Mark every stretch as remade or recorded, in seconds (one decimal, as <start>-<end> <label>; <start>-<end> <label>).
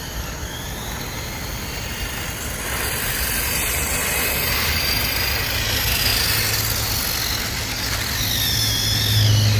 0.0-9.6 recorded